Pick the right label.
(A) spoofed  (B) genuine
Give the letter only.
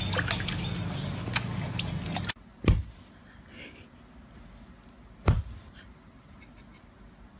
B